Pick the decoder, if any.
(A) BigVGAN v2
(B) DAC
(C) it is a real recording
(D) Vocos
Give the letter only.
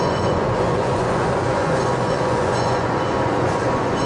D